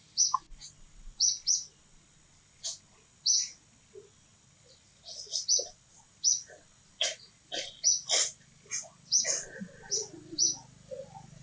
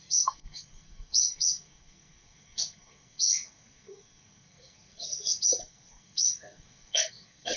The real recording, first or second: first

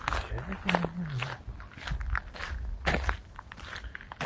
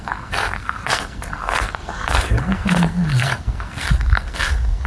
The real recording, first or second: first